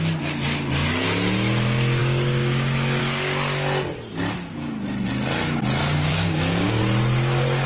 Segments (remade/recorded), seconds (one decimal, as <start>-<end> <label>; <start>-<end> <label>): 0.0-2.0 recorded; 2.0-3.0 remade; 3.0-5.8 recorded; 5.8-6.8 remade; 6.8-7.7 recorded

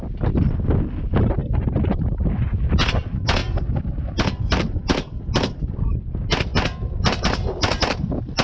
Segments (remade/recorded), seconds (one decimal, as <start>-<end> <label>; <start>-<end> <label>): 0.0-3.4 recorded; 3.4-5.7 remade; 5.7-8.4 recorded

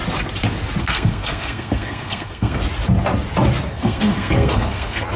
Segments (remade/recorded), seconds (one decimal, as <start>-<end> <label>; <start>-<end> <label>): 0.0-0.8 recorded; 0.8-2.6 remade; 2.6-3.7 recorded; 3.7-5.2 remade

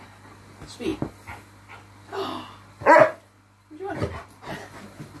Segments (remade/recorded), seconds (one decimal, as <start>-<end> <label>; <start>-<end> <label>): 0.0-5.2 recorded